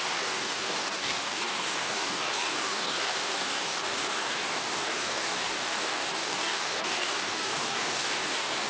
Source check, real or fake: fake